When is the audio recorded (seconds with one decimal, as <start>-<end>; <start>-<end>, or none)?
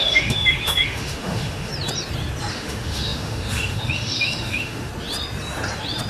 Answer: 1.7-2.5; 4.9-6.1